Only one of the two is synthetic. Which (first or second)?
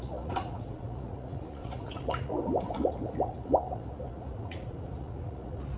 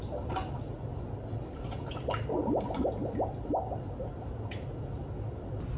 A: first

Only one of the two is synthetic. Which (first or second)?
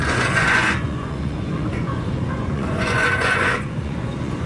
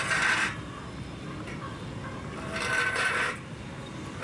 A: first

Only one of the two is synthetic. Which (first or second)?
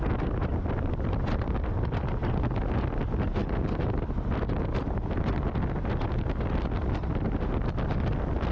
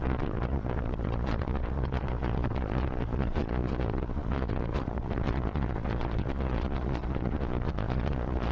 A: second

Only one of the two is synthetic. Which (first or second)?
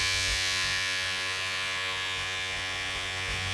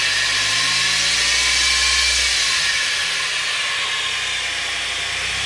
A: first